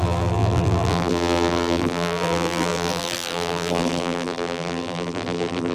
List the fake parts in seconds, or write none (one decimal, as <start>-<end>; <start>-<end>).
0.0-5.7